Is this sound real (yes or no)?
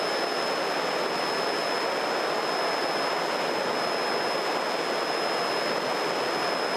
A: yes